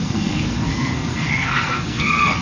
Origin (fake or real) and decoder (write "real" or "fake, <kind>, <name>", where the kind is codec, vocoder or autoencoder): fake, codec, SNAC